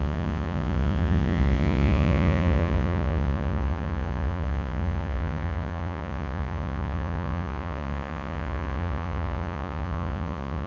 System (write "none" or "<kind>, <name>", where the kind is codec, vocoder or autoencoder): vocoder, Vocos